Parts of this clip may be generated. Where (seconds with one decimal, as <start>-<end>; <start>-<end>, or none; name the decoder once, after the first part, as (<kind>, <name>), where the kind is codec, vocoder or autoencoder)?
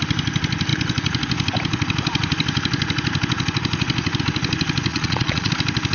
4.9-5.5 (vocoder, Vocos)